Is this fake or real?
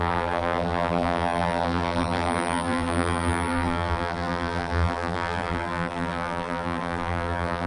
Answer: fake